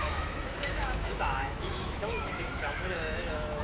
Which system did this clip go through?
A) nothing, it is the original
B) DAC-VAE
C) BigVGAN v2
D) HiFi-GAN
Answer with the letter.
B